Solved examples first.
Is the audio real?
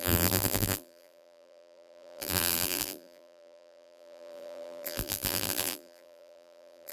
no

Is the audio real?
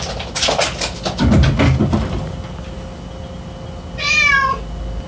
yes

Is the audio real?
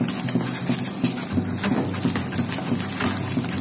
yes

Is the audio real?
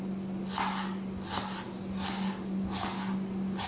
yes